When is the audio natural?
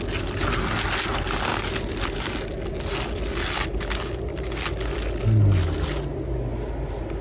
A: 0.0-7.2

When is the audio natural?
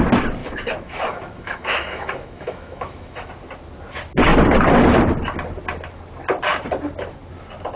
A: 0.0-0.4; 3.3-7.8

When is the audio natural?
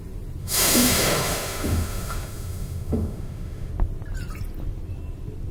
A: 0.0-0.4; 3.7-5.5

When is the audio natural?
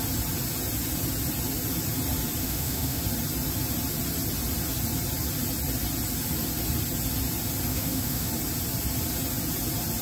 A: 0.0-2.4; 3.0-7.7; 8.3-10.0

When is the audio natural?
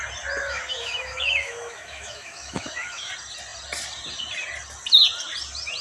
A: 0.0-0.4; 3.1-5.8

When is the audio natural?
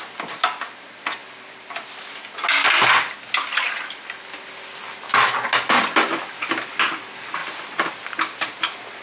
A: 0.0-9.0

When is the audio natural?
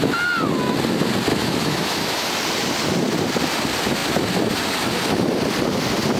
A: 0.0-1.3; 2.3-6.2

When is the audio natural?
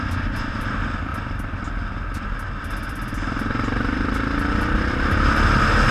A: 0.0-5.9